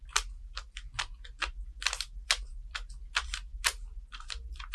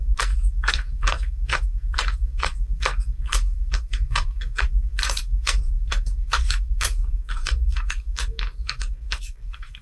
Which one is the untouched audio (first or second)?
first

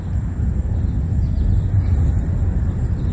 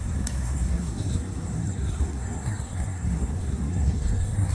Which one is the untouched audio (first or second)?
first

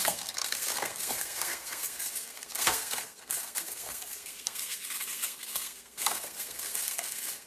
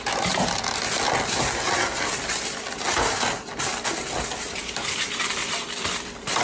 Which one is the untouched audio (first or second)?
second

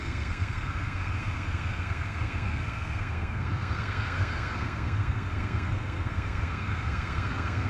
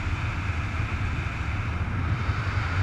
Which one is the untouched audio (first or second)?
second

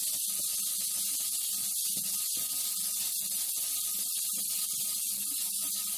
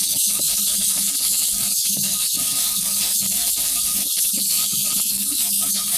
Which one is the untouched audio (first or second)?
first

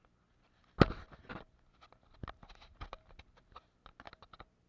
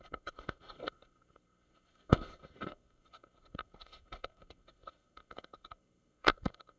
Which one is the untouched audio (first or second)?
first